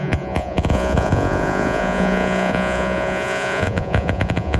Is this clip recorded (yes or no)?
no